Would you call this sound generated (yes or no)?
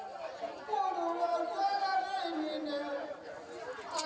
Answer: no